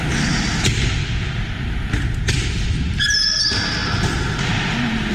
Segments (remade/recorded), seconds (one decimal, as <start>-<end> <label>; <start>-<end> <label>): 0.0-5.1 recorded